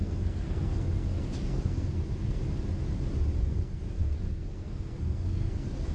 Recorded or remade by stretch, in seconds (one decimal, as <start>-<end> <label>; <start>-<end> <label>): 0.0-2.4 remade; 2.4-3.4 recorded; 3.4-5.9 remade